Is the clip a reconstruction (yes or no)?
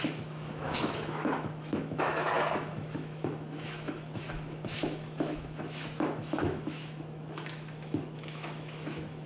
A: yes